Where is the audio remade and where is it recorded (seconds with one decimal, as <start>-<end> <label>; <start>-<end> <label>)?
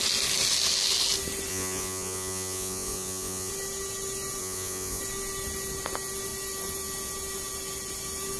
0.0-1.5 recorded; 1.5-3.5 remade; 3.5-4.4 recorded; 4.4-5.0 remade; 5.0-8.4 recorded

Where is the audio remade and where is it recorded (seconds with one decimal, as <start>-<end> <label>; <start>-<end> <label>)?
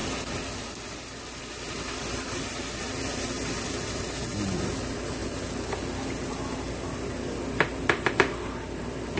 0.0-9.2 recorded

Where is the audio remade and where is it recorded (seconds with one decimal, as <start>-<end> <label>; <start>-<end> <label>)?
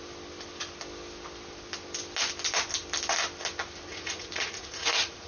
0.0-3.9 recorded; 3.9-5.3 remade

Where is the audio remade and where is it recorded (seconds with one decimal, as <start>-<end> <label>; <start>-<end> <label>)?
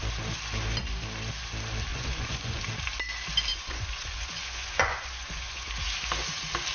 0.0-1.9 recorded; 1.9-2.6 remade; 2.6-3.5 recorded; 3.5-5.7 remade; 5.7-6.7 recorded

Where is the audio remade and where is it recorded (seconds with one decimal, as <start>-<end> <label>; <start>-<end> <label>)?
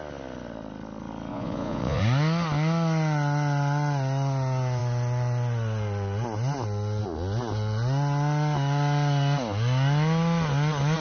0.0-1.3 recorded; 1.3-2.0 remade; 2.0-11.0 recorded